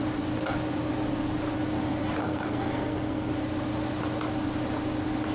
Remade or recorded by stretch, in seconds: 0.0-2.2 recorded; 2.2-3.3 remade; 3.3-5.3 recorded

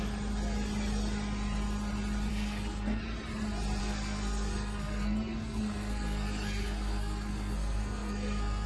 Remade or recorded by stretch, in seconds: 0.0-2.3 recorded; 2.3-3.0 remade; 3.0-3.8 recorded; 3.8-8.7 remade

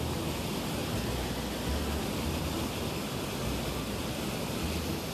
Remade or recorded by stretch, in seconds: 0.0-5.1 recorded

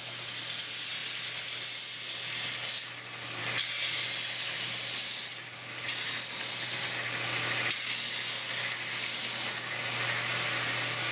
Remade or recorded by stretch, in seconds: 0.0-11.1 recorded

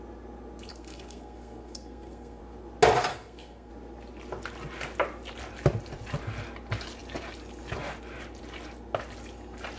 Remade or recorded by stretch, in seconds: 0.0-0.7 recorded; 0.7-2.4 remade; 2.4-3.1 recorded; 3.1-3.7 remade; 3.7-9.8 recorded

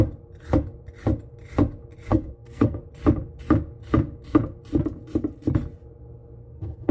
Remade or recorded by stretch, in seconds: 0.0-2.1 recorded; 2.1-2.8 remade; 2.8-6.4 recorded; 6.4-6.9 remade